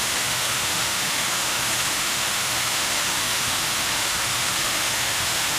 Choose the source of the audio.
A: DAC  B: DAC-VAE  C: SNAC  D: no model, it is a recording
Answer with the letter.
B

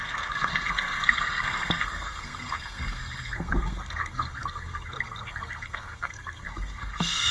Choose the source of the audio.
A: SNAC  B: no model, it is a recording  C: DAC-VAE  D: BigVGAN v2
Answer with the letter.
A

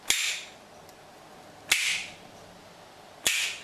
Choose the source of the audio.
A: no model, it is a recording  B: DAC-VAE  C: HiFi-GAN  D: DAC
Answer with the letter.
A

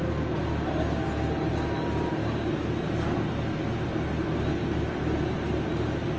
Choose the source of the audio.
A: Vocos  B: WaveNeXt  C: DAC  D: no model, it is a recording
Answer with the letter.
D